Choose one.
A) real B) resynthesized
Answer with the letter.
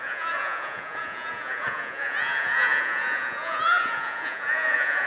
B